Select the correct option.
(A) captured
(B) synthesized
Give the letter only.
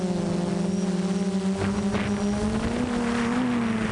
A